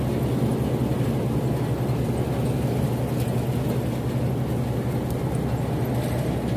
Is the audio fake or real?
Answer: real